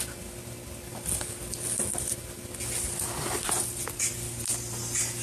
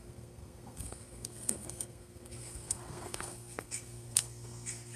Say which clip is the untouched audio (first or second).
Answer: first